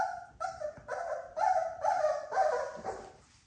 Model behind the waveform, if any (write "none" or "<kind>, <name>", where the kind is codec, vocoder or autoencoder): none